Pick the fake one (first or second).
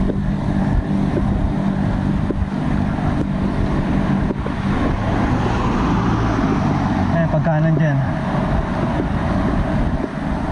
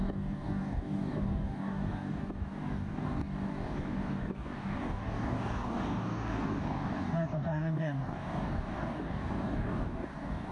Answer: second